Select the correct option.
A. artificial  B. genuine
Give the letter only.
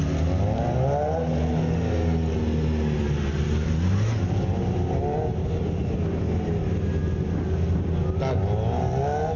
B